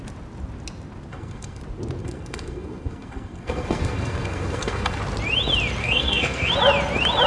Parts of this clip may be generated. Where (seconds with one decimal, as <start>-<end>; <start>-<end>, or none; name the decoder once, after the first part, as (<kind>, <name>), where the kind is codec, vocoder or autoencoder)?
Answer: 1.1-1.6 (codec, SNAC); 2.0-5.0; 5.8-6.5